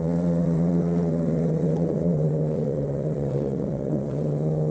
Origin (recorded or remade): remade